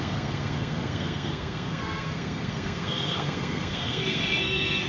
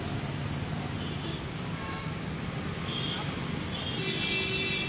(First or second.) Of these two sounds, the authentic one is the second